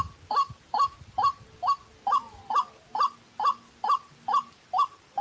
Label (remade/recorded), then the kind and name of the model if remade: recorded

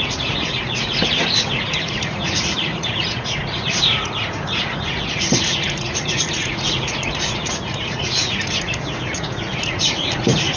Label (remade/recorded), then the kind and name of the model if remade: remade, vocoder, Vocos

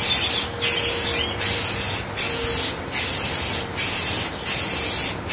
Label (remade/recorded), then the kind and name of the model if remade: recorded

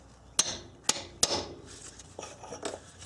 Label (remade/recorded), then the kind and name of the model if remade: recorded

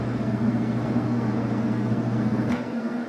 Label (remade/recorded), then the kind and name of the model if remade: remade, codec, SNAC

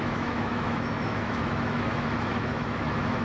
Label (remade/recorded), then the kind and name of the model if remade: remade, autoencoder, DAC-VAE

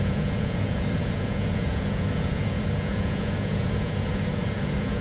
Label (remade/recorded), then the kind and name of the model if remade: remade, vocoder, Vocos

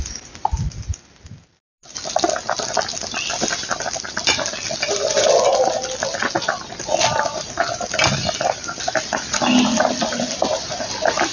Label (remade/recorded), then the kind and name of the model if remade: recorded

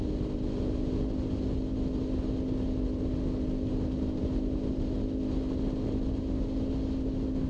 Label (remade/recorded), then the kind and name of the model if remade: recorded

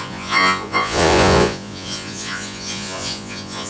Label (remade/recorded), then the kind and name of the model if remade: remade, vocoder, Vocos